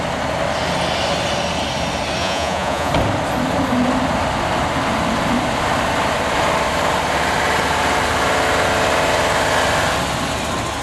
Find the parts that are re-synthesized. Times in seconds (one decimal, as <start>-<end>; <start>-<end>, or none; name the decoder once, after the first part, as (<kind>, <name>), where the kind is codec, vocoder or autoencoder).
2.2-2.9 (vocoder, Vocos)